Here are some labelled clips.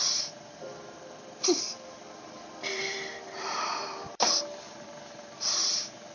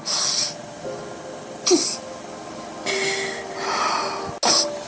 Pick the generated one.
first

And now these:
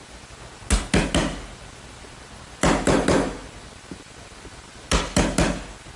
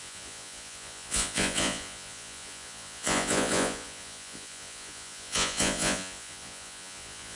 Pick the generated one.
second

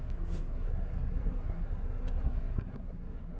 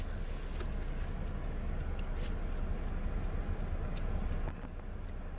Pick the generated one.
first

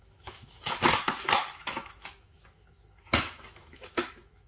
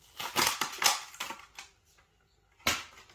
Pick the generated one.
first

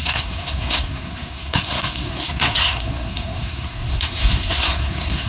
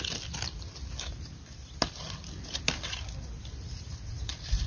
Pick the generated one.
first